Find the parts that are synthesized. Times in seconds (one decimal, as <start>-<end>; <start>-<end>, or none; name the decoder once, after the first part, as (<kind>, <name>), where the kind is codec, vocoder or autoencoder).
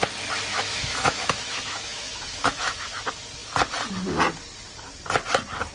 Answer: 0.5-2.9 (autoencoder, DAC-VAE)